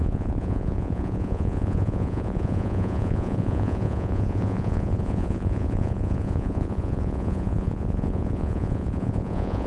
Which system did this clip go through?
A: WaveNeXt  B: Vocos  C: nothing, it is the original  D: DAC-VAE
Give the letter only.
B